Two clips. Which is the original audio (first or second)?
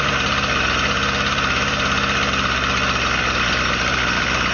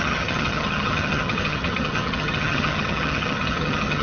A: first